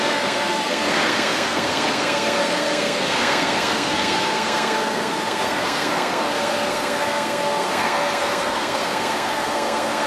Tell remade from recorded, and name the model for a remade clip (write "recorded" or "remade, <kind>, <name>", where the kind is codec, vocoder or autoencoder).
remade, codec, SNAC